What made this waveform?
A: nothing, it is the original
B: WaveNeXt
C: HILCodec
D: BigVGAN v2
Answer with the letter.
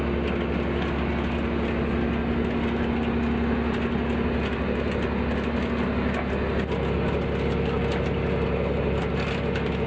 A